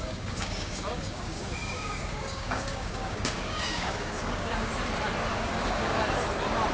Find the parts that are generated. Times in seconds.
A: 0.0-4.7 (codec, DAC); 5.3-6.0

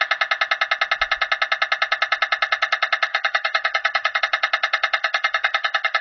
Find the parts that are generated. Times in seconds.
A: 3.1-4.2 (codec, DAC); 5.0-6.0

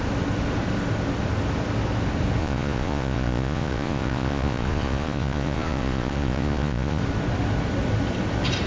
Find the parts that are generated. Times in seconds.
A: 2.4-7.0 (vocoder, Vocos)

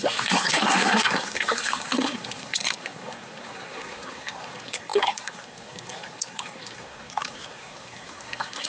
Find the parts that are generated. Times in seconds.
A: 0.0-8.7 (codec, SNAC)

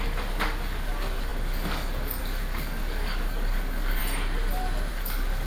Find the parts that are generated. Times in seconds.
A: 0.0-4.0 (codec, DAC); 4.9-5.5